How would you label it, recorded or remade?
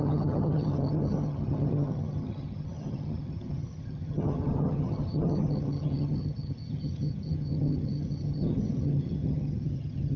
remade